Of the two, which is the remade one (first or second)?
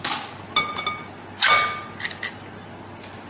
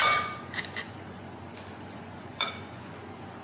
second